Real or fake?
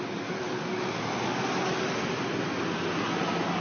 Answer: real